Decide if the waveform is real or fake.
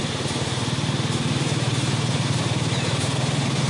fake